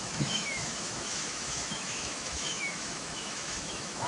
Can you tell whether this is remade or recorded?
remade